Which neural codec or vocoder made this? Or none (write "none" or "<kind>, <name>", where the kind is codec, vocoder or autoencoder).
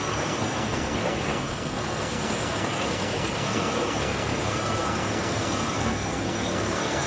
codec, SNAC